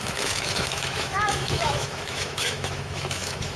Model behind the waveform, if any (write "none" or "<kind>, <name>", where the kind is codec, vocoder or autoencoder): autoencoder, DAC-VAE